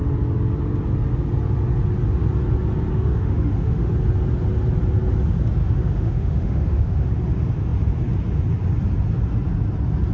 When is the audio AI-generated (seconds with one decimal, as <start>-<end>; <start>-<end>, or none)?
2.9-3.9; 5.6-7.1